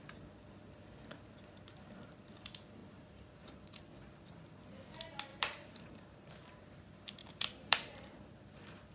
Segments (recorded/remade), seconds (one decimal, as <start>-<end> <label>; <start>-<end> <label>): 0.0-2.8 recorded; 2.8-3.8 remade; 3.8-5.3 recorded; 5.3-6.5 remade; 6.5-7.2 recorded; 7.2-8.0 remade; 8.0-8.9 recorded